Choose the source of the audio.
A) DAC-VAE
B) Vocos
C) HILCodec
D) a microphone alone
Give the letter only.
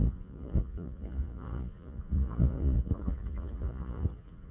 B